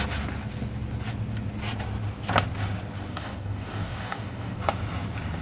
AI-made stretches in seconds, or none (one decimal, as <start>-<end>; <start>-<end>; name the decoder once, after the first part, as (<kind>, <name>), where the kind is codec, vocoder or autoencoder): 3.1-4.6 (codec, DAC)